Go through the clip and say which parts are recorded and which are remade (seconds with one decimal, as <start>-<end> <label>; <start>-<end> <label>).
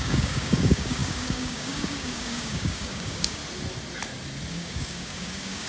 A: 0.0-3.4 remade; 3.4-4.5 recorded; 4.5-5.7 remade